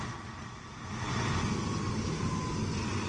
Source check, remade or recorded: recorded